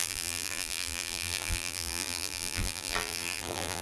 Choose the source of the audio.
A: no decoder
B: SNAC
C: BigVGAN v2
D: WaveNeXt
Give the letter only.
C